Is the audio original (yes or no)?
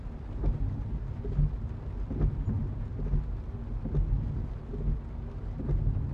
yes